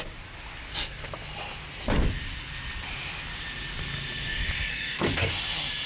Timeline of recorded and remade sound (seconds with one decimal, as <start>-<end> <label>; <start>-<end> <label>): 0.0-4.7 recorded; 4.7-5.3 remade; 5.3-5.9 recorded